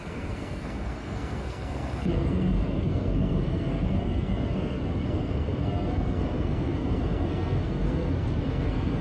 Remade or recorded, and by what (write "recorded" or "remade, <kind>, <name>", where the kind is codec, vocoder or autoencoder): remade, codec, SNAC